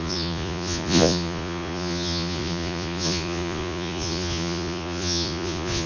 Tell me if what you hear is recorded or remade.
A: remade